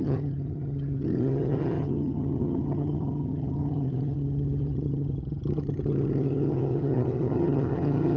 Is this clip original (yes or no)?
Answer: no